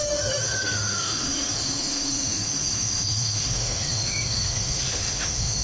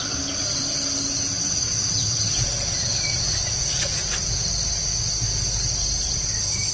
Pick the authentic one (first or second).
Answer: second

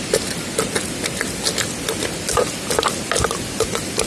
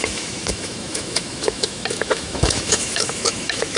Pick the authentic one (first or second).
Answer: first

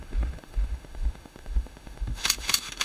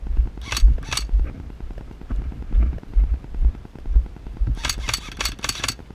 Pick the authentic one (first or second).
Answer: second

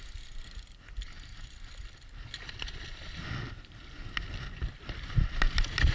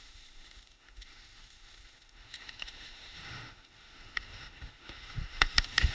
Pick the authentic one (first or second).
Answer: first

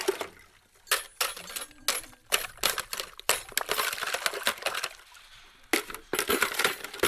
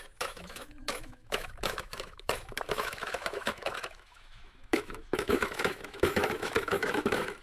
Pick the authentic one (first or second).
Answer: first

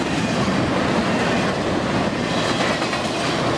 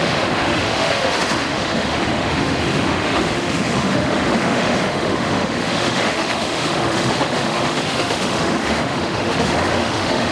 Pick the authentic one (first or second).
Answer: first